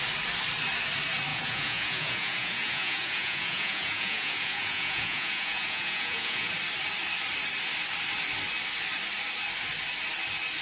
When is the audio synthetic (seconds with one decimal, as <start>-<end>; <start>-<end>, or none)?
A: 1.3-6.5